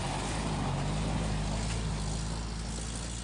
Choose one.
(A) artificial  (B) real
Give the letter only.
B